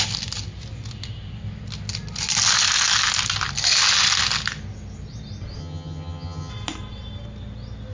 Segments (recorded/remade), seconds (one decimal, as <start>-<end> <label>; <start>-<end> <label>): 0.0-5.6 recorded; 5.6-6.5 remade; 6.5-7.9 recorded